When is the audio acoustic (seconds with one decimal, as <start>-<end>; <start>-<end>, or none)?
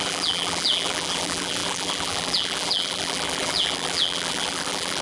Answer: none